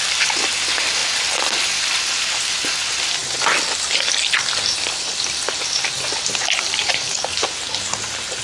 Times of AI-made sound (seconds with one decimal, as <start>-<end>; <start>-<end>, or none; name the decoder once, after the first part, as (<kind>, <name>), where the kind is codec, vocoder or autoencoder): none